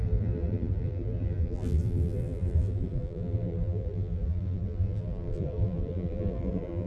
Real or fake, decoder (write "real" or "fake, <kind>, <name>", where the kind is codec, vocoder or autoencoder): fake, vocoder, BigVGAN v2